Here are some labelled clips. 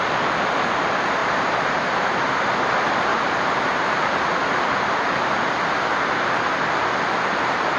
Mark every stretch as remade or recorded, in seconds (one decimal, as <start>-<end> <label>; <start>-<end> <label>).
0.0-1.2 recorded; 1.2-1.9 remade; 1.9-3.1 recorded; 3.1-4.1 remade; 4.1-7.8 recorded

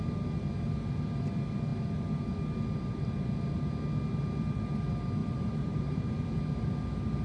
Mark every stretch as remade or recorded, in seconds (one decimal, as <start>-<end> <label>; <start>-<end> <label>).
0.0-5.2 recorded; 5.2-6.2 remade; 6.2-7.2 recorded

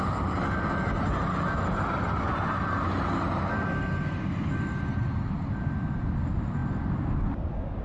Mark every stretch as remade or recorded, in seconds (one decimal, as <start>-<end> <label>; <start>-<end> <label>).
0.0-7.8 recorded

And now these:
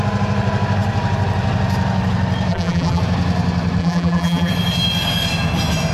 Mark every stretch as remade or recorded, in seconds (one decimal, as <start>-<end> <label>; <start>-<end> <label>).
0.0-2.5 recorded; 2.5-3.0 remade; 3.0-3.8 recorded; 3.8-4.5 remade; 4.5-5.9 recorded

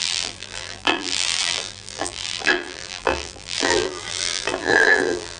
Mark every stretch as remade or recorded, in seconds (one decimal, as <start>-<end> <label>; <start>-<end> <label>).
0.0-5.4 remade

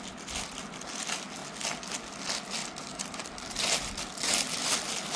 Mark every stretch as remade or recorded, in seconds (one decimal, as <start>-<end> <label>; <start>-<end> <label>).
0.0-5.2 recorded

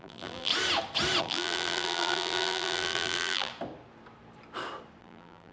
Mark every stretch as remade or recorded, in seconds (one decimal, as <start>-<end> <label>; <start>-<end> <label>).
0.0-0.5 remade; 0.5-1.2 recorded; 1.2-3.5 remade; 3.5-5.0 recorded; 5.0-5.5 remade

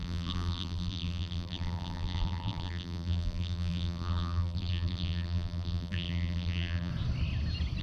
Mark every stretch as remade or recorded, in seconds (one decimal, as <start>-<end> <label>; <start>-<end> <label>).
0.0-6.9 remade; 6.9-7.8 recorded